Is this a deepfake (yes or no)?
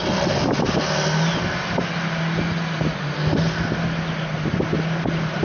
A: no